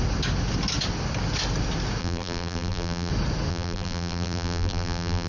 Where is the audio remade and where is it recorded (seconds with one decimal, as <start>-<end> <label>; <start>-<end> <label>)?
0.0-2.0 recorded; 2.0-3.1 remade; 3.1-3.5 recorded; 3.5-5.3 remade